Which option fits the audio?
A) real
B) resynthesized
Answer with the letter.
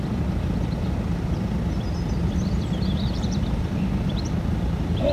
A